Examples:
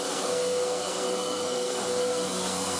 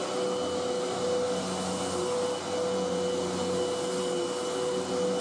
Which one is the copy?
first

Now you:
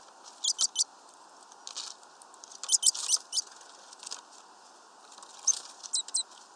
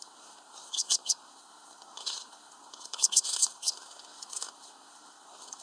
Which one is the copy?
second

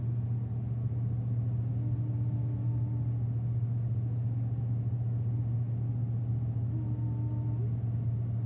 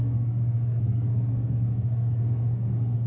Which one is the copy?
second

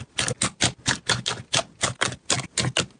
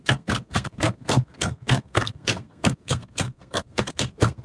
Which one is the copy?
second